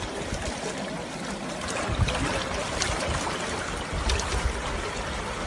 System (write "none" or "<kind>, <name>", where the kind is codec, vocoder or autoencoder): none